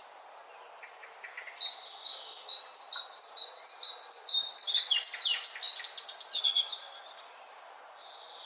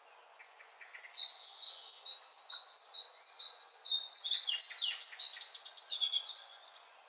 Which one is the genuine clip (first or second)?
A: first